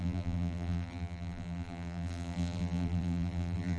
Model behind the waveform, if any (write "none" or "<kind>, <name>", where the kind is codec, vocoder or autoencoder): vocoder, BigVGAN v2